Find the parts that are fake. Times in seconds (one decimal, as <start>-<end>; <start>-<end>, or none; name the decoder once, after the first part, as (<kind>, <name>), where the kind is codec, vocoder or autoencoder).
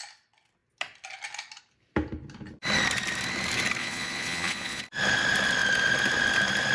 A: 3.8-4.8 (vocoder, Vocos)